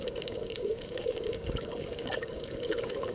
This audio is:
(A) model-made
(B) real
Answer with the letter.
A